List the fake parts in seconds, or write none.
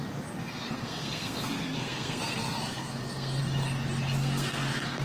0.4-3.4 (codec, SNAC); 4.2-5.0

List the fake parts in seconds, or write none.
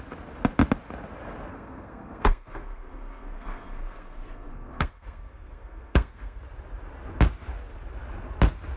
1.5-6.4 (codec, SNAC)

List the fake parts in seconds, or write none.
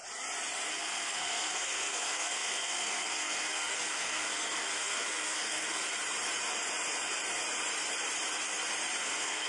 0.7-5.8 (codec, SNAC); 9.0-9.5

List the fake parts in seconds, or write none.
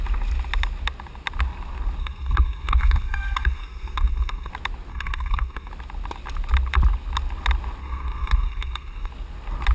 2.0-4.5 (codec, SNAC); 4.9-5.7; 7.8-9.1